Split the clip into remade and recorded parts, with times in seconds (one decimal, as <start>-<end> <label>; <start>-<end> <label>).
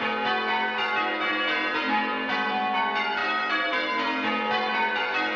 0.0-5.4 recorded